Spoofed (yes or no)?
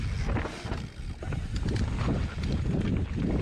no